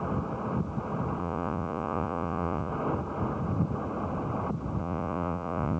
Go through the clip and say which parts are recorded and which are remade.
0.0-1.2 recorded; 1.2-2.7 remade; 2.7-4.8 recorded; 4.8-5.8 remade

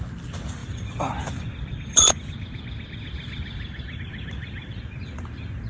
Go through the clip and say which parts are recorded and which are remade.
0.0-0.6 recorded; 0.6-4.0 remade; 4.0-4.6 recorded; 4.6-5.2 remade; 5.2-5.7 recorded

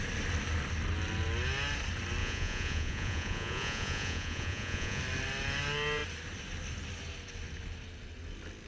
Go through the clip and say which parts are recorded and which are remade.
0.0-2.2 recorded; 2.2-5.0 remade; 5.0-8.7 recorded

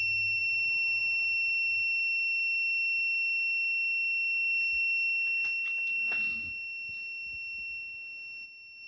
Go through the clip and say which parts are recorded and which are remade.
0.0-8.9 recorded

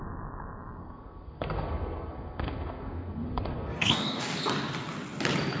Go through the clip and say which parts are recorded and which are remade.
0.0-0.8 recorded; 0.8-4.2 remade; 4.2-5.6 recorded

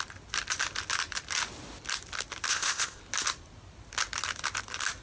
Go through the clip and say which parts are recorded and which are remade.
0.0-2.5 recorded; 2.5-3.0 remade; 3.0-5.0 recorded

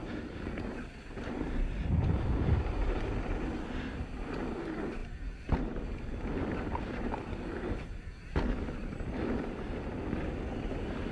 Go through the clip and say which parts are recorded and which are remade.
0.0-5.0 recorded; 5.0-9.8 remade; 9.8-11.1 recorded